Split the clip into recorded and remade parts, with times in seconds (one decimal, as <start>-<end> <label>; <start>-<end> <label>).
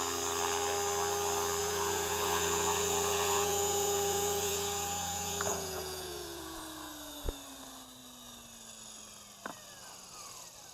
0.0-1.6 recorded; 1.6-6.6 remade; 6.6-10.7 recorded